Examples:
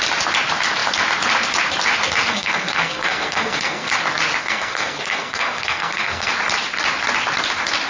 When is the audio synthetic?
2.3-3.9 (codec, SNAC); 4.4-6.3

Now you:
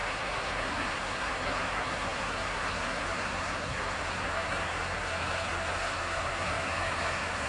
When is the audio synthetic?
0.0-7.5 (codec, SNAC)

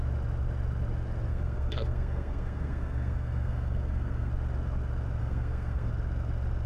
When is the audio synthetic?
1.3-4.3 (codec, SNAC); 5.2-5.9

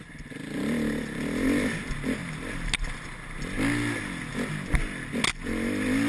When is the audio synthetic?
none